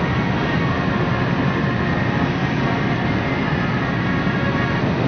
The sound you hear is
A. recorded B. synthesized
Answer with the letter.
A